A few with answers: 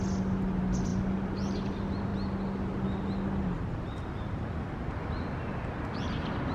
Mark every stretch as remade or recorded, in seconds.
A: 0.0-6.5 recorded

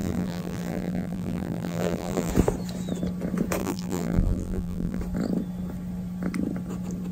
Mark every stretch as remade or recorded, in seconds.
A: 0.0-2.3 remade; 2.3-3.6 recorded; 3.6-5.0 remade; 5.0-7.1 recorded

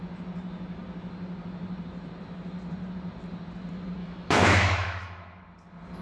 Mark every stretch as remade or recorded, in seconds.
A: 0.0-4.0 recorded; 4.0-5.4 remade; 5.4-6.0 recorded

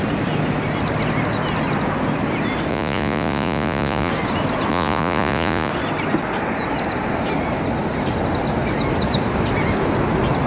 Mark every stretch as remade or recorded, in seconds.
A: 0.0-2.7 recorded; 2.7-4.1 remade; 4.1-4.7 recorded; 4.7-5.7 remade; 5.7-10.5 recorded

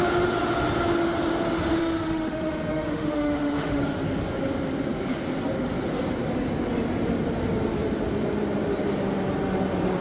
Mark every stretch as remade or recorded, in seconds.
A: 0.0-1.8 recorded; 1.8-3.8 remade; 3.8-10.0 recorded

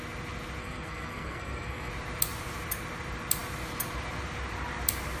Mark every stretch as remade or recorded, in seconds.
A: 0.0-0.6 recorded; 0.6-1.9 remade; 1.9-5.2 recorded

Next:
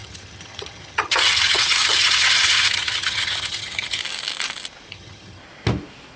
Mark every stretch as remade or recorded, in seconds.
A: 0.0-4.0 remade; 4.0-4.9 recorded; 4.9-5.4 remade; 5.4-6.2 recorded

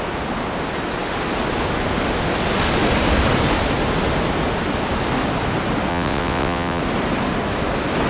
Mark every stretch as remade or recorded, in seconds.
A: 0.0-5.9 recorded; 5.9-6.8 remade; 6.8-8.1 recorded